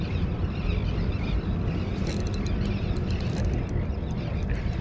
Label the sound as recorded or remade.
recorded